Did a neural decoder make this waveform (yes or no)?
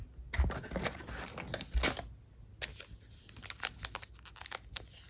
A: no